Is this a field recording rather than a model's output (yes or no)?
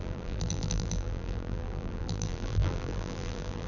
no